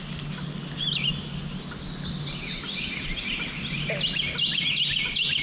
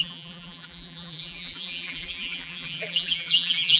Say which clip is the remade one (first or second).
second